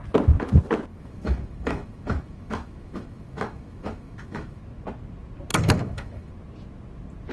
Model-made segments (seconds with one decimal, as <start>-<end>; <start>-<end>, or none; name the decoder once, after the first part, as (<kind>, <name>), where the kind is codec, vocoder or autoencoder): 0.9-4.6 (autoencoder, DAC-VAE); 5.5-6.3